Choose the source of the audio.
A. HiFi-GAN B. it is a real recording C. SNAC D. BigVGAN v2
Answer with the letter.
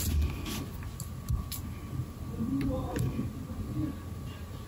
B